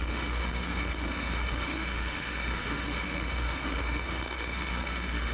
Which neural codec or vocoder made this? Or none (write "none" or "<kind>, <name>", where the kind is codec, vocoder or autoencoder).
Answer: autoencoder, DAC-VAE